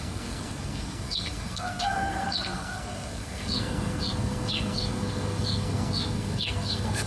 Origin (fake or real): fake